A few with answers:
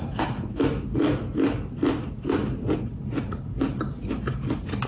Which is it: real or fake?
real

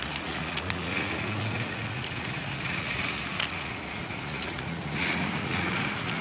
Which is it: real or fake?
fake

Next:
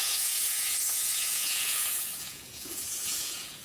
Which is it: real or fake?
fake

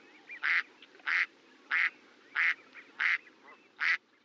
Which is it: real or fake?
real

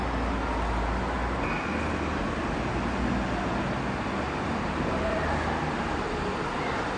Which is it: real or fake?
real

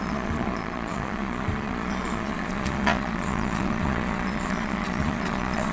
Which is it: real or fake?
fake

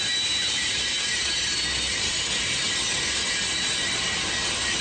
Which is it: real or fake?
real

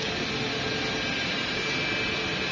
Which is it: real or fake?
real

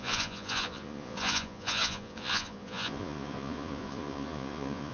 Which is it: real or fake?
fake